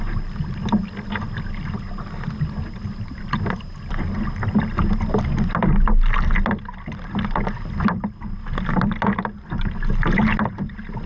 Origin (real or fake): real